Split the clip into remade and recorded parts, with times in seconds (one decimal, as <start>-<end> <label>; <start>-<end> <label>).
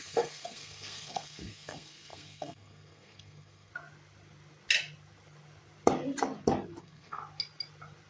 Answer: 0.0-3.7 remade; 3.7-6.8 recorded; 6.8-7.2 remade; 7.2-8.1 recorded